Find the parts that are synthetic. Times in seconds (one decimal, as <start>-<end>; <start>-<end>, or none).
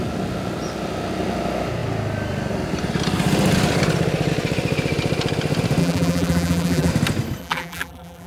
5.8-6.9; 7.4-8.3